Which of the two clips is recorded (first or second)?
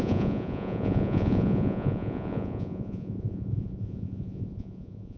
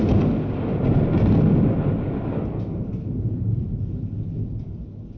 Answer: second